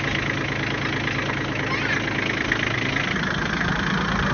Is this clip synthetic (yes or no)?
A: no